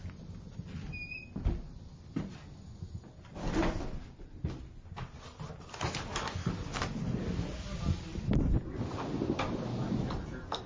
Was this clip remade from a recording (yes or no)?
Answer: no